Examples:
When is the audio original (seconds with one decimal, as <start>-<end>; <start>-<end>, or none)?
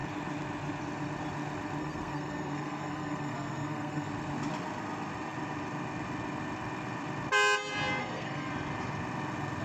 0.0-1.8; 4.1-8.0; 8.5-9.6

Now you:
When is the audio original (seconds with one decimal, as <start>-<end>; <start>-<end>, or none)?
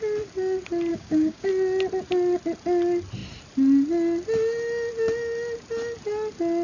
0.0-0.9; 1.5-6.6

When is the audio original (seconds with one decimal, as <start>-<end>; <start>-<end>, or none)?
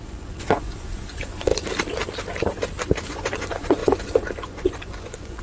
1.5-3.1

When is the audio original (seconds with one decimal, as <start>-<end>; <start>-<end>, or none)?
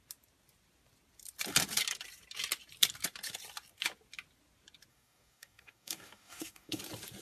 0.0-4.9; 6.8-7.2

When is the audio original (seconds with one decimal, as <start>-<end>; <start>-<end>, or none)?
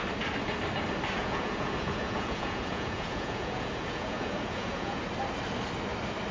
0.0-1.2; 5.0-6.3